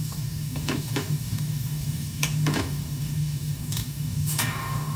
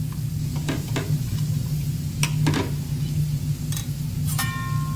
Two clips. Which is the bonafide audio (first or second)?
second